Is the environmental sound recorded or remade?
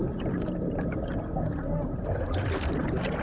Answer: recorded